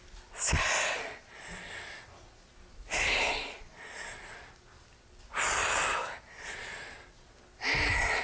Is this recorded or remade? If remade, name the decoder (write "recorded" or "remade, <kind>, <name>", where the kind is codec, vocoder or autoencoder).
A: recorded